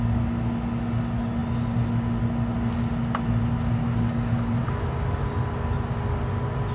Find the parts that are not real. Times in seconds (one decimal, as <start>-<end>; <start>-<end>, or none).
none